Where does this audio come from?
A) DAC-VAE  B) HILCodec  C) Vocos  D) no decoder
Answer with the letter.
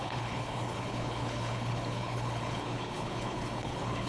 B